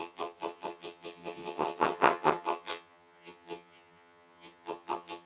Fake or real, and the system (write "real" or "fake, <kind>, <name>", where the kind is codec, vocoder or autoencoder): fake, vocoder, HiFi-GAN